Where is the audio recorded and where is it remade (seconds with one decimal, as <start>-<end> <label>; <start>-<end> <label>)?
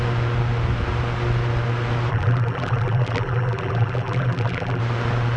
0.0-2.1 recorded; 2.1-4.8 remade; 4.8-5.4 recorded